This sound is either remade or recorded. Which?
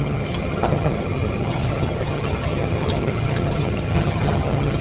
remade